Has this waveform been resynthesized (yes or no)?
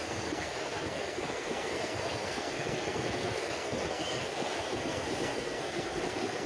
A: yes